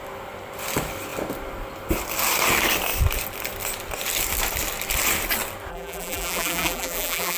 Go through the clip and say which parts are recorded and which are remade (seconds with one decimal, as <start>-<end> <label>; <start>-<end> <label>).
0.0-5.7 recorded; 5.7-7.4 remade